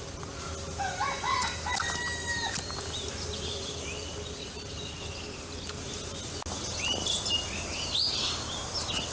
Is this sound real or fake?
real